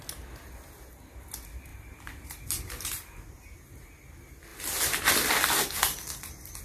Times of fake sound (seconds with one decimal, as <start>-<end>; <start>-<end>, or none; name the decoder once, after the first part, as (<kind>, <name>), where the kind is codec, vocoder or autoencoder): 1.7-3.9 (vocoder, BigVGAN v2); 4.5-5.1